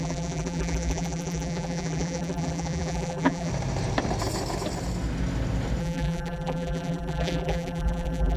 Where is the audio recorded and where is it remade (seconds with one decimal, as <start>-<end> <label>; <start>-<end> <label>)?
0.0-3.5 remade; 3.5-5.8 recorded; 5.8-8.4 remade